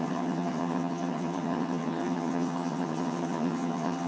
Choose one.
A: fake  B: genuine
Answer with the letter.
A